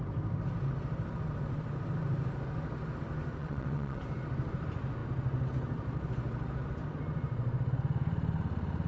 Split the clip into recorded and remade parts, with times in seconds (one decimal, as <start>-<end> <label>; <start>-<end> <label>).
0.0-3.4 recorded; 3.4-4.0 remade; 4.0-8.9 recorded